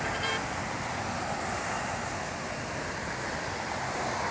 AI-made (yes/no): yes